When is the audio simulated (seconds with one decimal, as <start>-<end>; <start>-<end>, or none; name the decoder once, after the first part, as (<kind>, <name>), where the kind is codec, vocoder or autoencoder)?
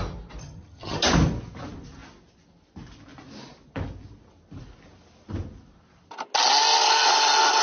0.4-1.0 (vocoder, HiFi-GAN)